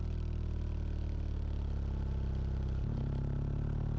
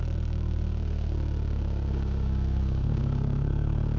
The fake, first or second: second